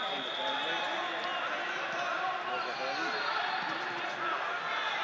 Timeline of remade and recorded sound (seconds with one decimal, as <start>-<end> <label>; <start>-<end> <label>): 0.0-5.0 recorded